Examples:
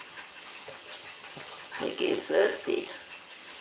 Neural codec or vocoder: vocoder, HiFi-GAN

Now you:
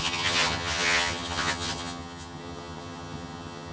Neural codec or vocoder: vocoder, HiFi-GAN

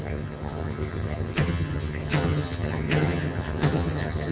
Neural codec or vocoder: vocoder, HiFi-GAN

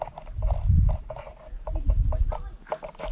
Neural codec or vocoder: none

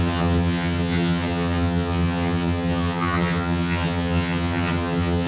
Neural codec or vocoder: vocoder, HiFi-GAN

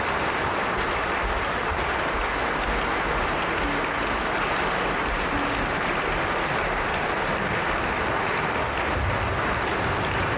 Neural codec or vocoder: none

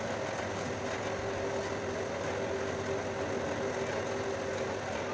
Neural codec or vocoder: none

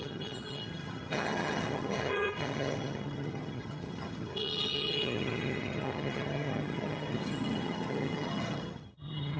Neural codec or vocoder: vocoder, HiFi-GAN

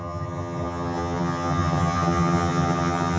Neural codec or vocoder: vocoder, HiFi-GAN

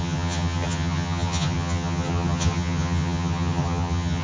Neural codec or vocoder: vocoder, HiFi-GAN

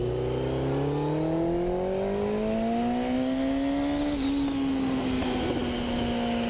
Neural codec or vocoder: none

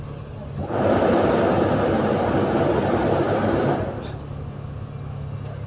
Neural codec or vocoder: none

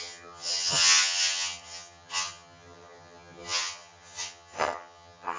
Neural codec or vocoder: vocoder, HiFi-GAN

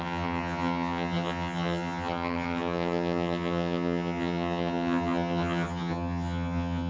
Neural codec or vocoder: vocoder, HiFi-GAN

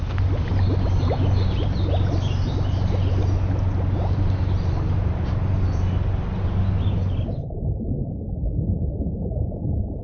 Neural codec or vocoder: none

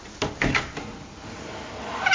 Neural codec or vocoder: none